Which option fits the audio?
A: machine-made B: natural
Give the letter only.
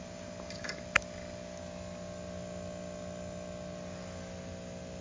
B